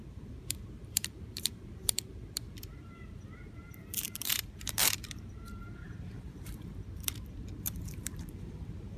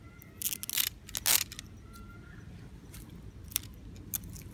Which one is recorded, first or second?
second